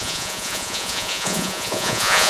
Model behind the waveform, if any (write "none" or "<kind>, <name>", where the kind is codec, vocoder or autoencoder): vocoder, Vocos